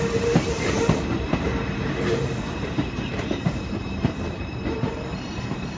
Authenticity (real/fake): fake